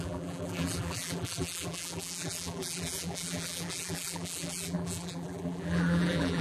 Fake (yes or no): yes